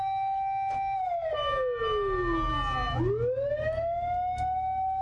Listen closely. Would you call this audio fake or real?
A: real